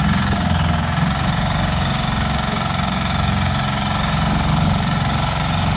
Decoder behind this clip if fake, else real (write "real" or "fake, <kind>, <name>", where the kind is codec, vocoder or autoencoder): fake, codec, DAC